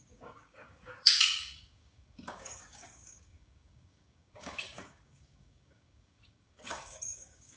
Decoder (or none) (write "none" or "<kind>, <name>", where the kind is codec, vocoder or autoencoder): codec, DAC